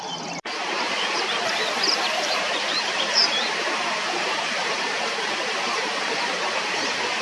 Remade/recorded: remade